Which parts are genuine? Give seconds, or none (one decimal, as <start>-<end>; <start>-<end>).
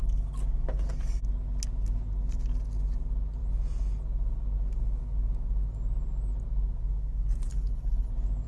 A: 0.0-7.5; 8.1-8.5